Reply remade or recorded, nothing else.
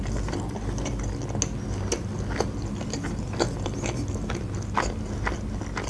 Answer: recorded